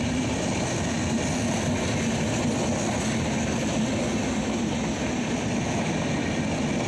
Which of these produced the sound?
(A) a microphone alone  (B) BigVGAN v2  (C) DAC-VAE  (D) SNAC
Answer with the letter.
A